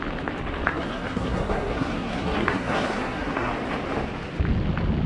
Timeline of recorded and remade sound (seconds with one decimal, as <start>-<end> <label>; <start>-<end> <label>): 0.0-0.7 recorded; 0.7-3.5 remade; 3.5-5.1 recorded